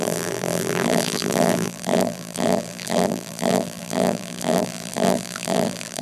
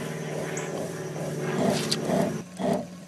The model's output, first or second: first